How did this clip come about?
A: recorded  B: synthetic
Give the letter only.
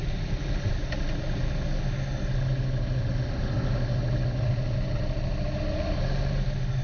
A